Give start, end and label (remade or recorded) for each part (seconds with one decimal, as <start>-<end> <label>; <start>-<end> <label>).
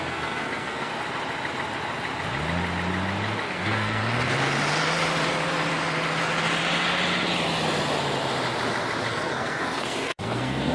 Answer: 0.0-0.9 remade; 0.9-3.4 recorded; 3.4-4.0 remade; 4.0-9.1 recorded; 9.1-10.7 remade